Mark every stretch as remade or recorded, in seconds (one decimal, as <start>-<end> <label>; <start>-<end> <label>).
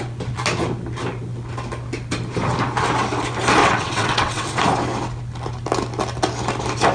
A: 0.0-3.6 recorded; 3.6-4.6 remade; 4.6-6.9 recorded